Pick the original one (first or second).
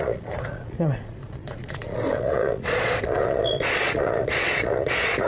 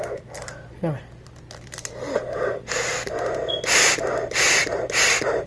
second